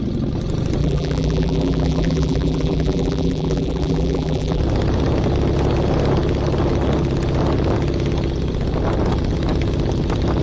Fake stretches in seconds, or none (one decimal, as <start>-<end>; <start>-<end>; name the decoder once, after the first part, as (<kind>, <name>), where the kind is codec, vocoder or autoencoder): 0.8-4.6 (vocoder, BigVGAN v2)